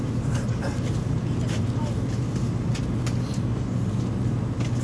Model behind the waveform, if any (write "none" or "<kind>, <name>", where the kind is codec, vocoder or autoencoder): none